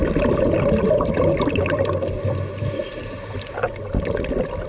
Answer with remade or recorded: recorded